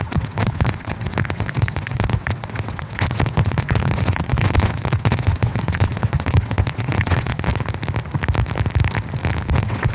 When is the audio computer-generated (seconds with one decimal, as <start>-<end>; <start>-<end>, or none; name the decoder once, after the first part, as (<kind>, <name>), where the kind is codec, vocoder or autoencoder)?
0.0-7.5 (vocoder, WaveNeXt); 9.5-9.9